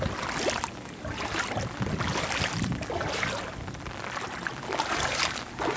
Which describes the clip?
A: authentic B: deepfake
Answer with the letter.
A